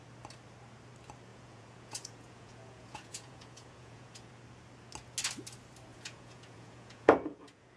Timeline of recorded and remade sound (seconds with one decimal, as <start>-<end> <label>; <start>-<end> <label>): 0.0-1.3 recorded; 1.3-4.3 remade; 4.3-5.9 recorded; 5.9-7.8 remade

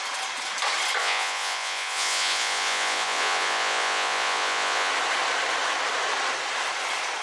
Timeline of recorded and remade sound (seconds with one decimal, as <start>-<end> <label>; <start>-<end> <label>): 0.0-1.0 recorded; 1.0-4.9 remade; 4.9-7.2 recorded